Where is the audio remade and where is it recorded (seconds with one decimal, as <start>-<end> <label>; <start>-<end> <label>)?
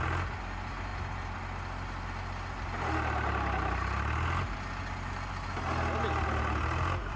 0.0-7.2 recorded